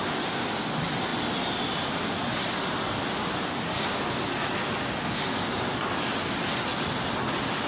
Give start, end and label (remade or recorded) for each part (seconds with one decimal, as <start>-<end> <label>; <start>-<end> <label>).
0.0-7.7 recorded